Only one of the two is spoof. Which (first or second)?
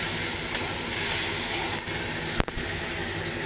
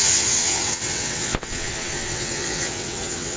second